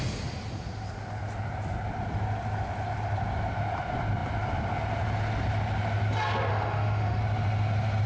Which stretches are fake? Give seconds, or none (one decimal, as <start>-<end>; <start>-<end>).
6.5-7.2